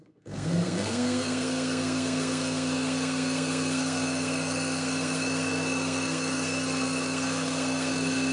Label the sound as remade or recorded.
remade